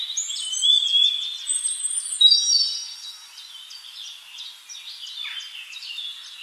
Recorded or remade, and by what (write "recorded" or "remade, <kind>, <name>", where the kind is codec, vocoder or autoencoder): recorded